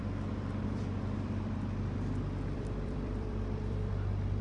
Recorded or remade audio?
remade